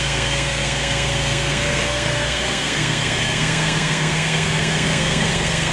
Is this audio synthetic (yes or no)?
yes